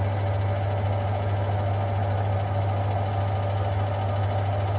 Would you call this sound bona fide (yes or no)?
yes